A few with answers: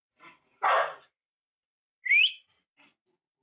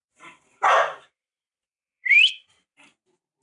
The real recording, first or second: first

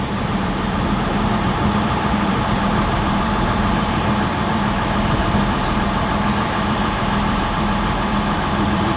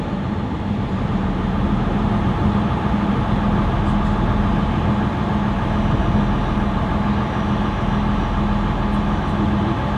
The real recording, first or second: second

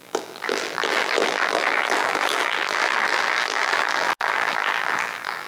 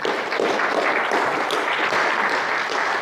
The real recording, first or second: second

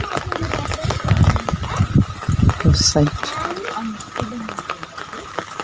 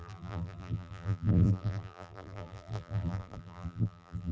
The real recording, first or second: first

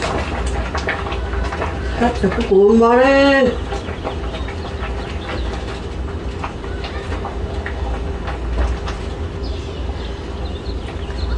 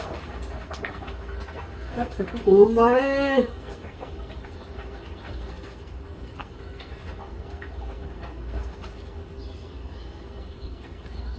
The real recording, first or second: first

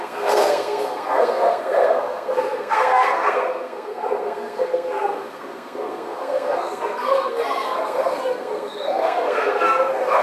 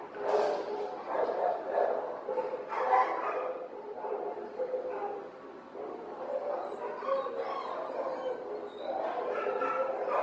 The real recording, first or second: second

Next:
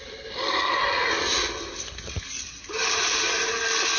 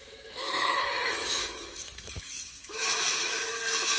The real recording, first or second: first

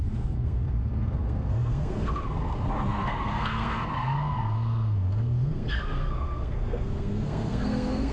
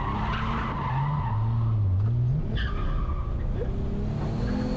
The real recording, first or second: second